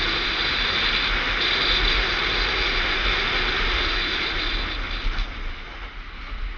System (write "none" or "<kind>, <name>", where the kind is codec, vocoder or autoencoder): none